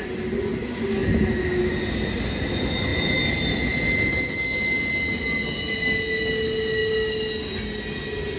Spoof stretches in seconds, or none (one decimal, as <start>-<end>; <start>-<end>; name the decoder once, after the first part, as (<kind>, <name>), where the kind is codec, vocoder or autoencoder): none